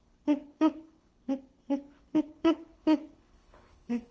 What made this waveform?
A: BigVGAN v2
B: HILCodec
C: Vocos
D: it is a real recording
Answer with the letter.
B